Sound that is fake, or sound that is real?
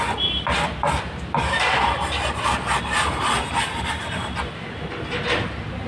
real